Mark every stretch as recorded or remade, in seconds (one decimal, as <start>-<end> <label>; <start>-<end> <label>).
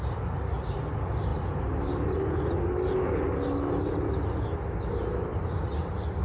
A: 0.0-6.2 recorded